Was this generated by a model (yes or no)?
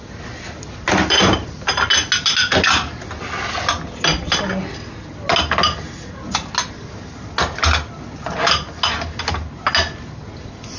no